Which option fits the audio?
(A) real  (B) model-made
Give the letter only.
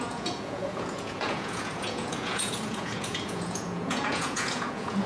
B